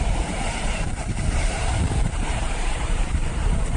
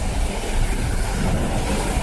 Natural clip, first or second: second